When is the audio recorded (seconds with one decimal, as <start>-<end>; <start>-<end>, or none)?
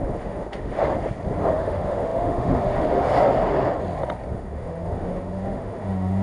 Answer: 0.9-1.5; 3.1-4.3